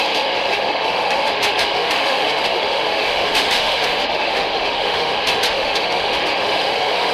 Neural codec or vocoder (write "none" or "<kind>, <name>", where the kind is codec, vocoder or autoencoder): autoencoder, DAC-VAE